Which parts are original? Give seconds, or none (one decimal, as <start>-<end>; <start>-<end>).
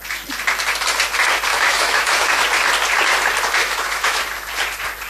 0.0-1.5; 2.4-3.6; 4.2-5.1